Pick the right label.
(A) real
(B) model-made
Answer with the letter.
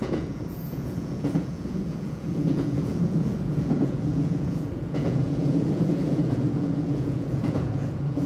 B